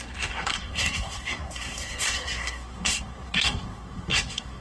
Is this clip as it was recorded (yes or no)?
no